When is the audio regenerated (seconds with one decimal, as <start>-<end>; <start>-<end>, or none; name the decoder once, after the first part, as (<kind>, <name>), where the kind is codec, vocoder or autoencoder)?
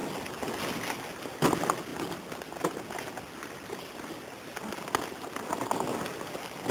none